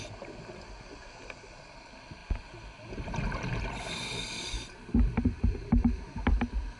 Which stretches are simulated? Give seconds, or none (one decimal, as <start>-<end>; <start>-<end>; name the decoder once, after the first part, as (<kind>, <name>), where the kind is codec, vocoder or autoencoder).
none